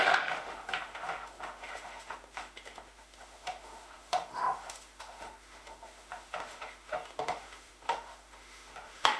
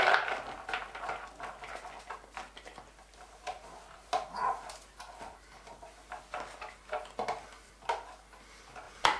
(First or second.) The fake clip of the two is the first